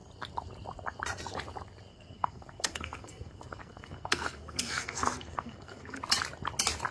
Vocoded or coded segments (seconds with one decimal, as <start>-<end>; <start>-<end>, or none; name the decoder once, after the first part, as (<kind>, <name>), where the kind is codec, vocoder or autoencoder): 1.9-6.0 (codec, SNAC)